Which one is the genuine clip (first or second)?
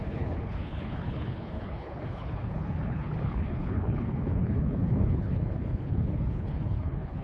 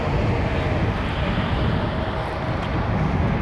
second